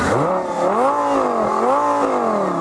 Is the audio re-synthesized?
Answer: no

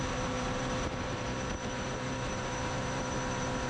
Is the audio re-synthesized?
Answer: yes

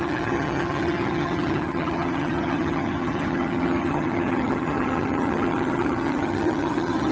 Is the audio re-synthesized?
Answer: yes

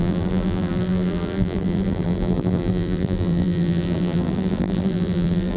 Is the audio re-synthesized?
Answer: yes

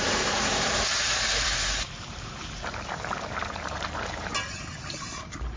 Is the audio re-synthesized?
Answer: yes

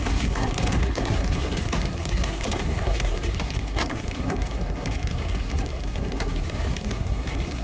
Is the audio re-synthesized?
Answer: yes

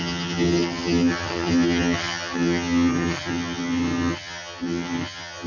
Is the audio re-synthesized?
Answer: yes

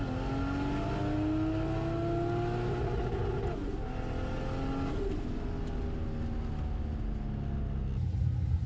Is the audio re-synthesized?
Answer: no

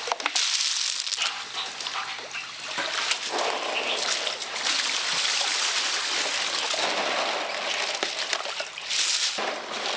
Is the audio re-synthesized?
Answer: no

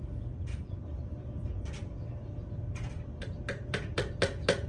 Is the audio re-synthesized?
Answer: yes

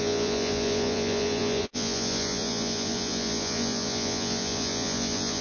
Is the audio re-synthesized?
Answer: yes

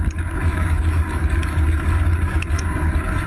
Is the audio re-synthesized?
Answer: yes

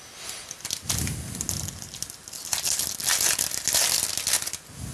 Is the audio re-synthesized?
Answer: no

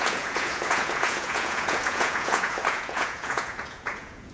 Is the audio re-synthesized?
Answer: yes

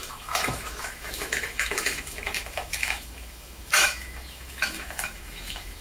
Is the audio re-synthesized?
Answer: yes